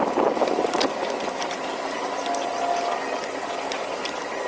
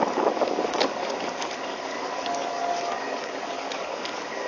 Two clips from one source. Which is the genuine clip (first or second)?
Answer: first